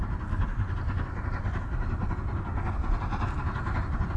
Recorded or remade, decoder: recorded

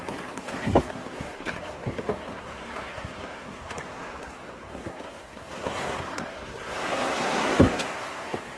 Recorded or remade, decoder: remade, codec, SNAC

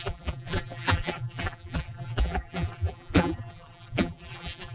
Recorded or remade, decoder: remade, vocoder, BigVGAN v2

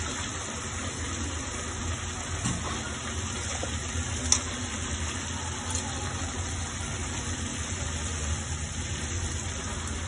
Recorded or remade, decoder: recorded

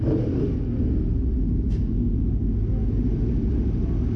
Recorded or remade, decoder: recorded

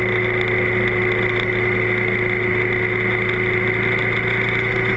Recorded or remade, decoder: recorded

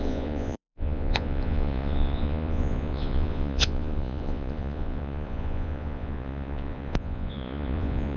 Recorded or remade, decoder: remade, vocoder, Vocos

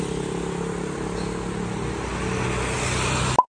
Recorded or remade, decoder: recorded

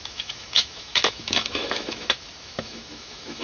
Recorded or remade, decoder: remade, autoencoder, DAC-VAE